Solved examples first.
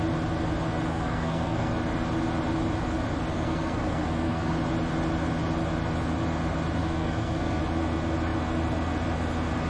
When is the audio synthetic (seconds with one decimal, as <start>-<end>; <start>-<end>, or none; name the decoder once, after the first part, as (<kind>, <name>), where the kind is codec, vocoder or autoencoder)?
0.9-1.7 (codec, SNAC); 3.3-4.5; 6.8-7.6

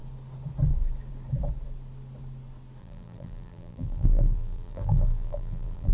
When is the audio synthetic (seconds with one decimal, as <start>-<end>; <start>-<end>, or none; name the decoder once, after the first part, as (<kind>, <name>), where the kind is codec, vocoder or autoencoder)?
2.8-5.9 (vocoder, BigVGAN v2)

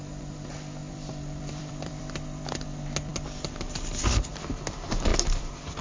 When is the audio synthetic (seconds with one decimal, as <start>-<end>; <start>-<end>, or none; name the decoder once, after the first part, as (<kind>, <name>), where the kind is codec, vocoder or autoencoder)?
0.8-1.9 (vocoder, BigVGAN v2); 5.1-5.8

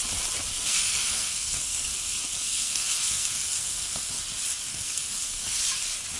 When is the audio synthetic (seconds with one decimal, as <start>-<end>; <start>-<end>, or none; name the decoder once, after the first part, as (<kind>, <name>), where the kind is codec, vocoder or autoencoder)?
0.5-4.2 (codec, SNAC); 4.7-5.6

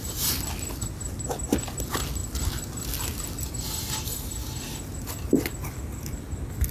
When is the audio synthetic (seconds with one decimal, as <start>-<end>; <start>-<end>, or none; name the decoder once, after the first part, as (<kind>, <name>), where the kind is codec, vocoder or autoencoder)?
none

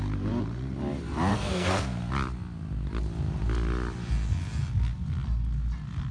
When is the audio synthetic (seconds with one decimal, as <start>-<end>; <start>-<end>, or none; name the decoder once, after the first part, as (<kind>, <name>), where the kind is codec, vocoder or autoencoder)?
1.3-2.0 (codec, SNAC)

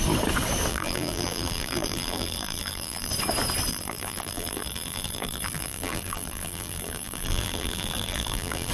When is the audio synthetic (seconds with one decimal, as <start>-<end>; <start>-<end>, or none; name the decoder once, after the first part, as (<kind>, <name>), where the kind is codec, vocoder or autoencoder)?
0.7-3.1 (vocoder, BigVGAN v2); 3.7-8.7